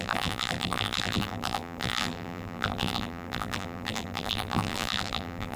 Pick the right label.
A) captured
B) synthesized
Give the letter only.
B